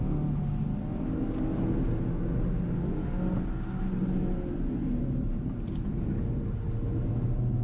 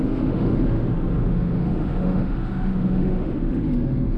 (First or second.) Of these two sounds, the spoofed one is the second